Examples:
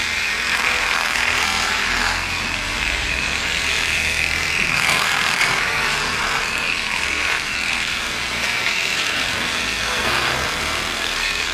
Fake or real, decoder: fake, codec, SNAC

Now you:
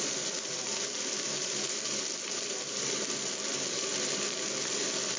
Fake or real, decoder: fake, vocoder, BigVGAN v2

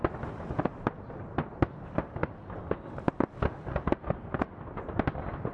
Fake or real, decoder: real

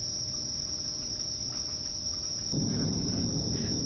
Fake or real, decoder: real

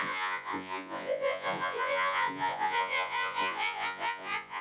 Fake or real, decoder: fake, vocoder, Vocos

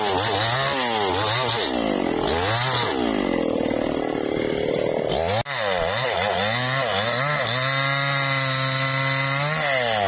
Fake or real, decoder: real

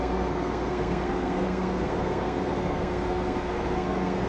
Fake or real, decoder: fake, codec, SNAC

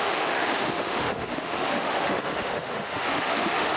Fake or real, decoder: fake, autoencoder, DAC-VAE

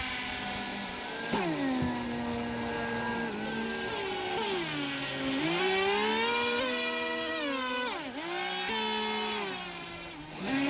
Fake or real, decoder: real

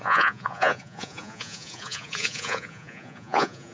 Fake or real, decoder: fake, vocoder, Vocos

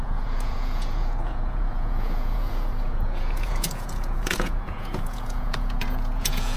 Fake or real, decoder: fake, vocoder, Vocos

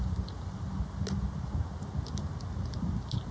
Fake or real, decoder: real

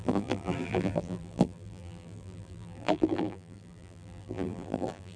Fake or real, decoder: fake, vocoder, BigVGAN v2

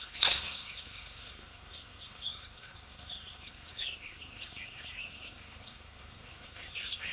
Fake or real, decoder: fake, codec, SNAC